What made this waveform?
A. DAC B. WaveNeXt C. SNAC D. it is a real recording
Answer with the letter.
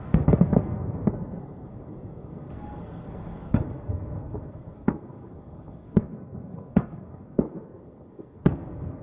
C